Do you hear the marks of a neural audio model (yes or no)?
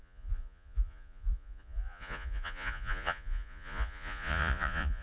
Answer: yes